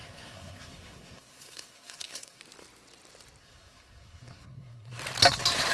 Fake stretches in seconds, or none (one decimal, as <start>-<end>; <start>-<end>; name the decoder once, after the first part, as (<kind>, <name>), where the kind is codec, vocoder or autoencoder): 0.0-2.4 (codec, SNAC); 3.4-5.0

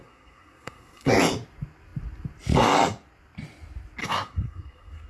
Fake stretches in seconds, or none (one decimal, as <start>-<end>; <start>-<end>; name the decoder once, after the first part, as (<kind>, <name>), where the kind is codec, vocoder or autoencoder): 0.0-1.1 (codec, SNAC); 4.0-5.1